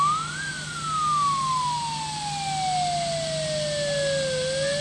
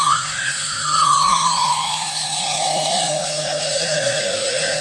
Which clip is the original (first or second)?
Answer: first